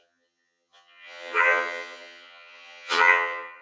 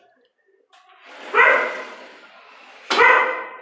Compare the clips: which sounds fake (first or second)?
first